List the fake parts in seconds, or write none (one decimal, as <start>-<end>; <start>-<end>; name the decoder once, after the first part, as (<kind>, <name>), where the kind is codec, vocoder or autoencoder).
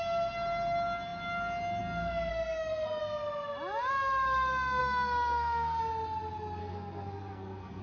2.3-3.0 (codec, SNAC); 4.8-5.8; 6.6-7.8